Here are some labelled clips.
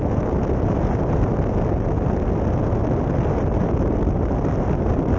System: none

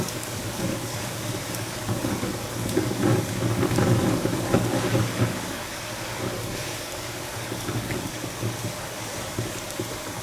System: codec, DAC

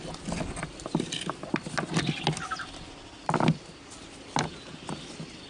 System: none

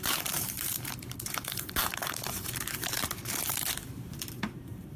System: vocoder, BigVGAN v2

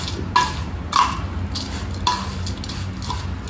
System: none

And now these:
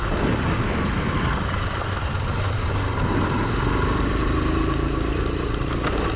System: none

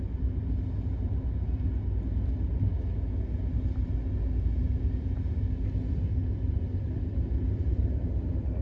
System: none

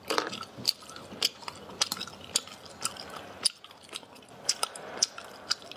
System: none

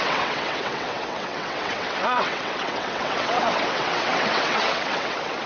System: vocoder, WaveNeXt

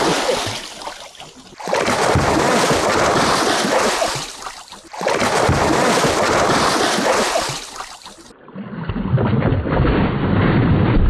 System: none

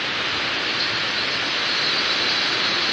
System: none